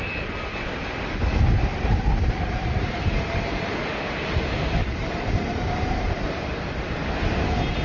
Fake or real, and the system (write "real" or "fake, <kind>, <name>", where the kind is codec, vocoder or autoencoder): real